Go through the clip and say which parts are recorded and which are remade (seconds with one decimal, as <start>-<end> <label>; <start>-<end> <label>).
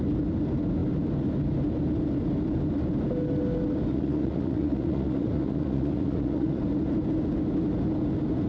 0.0-3.9 recorded; 3.9-6.6 remade; 6.6-8.5 recorded